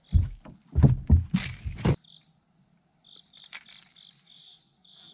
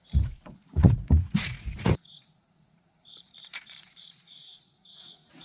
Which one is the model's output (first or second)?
second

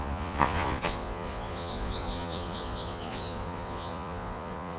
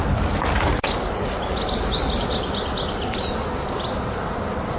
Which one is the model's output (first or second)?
first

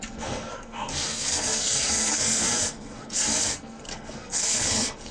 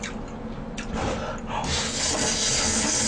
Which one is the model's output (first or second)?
first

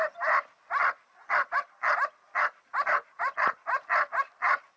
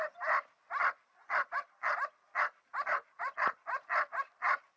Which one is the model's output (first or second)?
second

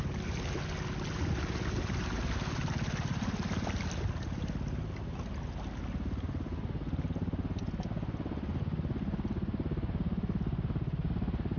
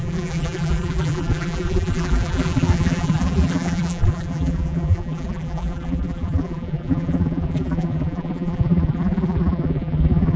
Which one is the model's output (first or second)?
second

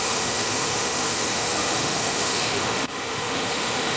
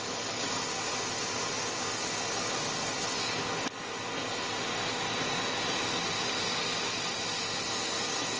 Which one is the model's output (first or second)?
first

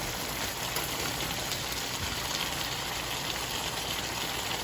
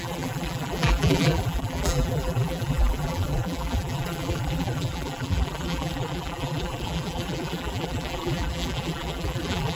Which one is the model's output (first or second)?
second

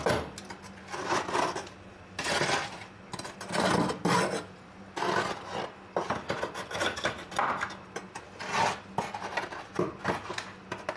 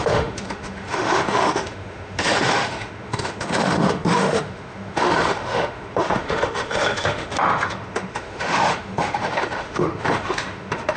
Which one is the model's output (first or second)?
second